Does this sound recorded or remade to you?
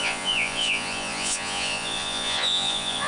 remade